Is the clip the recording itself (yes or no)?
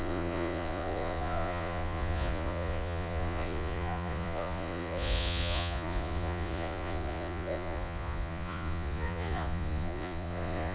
no